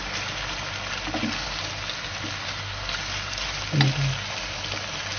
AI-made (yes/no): no